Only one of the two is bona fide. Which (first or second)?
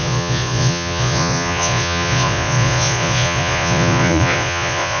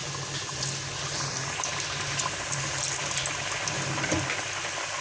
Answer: second